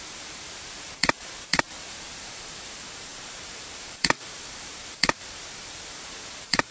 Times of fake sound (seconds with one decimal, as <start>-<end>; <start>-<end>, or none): 0.0-6.7